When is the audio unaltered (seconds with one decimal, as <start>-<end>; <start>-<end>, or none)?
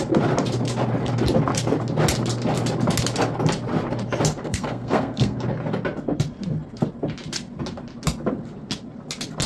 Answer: 0.0-4.4; 5.4-9.5